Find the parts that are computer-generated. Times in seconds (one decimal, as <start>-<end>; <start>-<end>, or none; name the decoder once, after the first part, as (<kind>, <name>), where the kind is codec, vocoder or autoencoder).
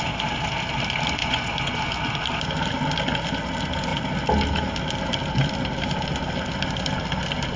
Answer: 1.2-1.8 (vocoder, Vocos)